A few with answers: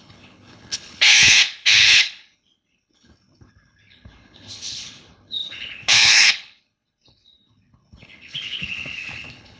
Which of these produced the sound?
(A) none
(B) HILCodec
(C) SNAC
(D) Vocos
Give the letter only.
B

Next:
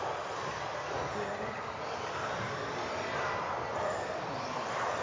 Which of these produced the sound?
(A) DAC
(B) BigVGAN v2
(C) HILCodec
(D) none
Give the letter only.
D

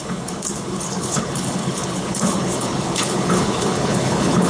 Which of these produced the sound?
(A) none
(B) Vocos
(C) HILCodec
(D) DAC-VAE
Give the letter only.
C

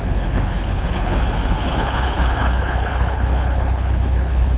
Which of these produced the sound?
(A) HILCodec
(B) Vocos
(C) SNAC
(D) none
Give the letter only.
A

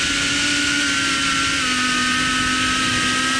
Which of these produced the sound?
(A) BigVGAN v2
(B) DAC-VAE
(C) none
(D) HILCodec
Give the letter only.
C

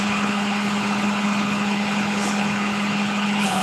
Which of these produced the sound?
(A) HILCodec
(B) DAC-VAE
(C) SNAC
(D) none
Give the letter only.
A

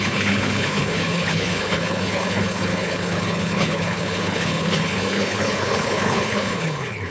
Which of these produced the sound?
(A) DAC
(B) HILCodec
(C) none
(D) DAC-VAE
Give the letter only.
B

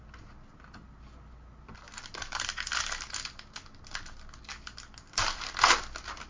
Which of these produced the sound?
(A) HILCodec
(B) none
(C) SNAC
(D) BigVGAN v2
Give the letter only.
B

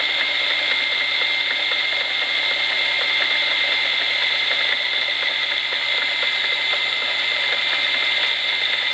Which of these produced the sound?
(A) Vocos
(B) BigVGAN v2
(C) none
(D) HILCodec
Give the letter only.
C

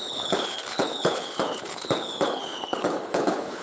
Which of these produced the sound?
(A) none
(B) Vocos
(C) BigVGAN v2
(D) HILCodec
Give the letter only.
D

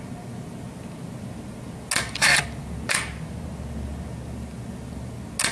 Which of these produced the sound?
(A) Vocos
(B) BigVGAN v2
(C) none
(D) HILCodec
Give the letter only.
C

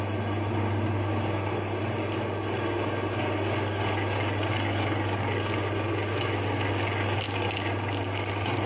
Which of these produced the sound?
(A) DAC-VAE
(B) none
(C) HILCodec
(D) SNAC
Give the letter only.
B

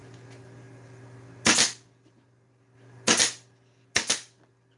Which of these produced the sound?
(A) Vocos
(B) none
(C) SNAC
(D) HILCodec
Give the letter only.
B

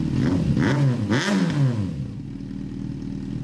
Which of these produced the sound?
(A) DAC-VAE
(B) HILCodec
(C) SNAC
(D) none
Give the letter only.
D